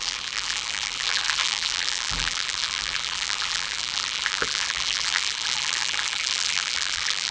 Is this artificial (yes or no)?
yes